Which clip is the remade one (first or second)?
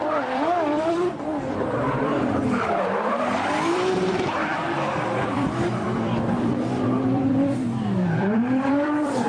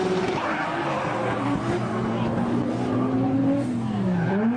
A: first